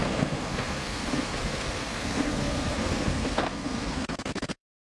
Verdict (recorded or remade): remade